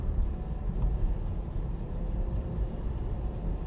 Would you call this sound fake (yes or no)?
no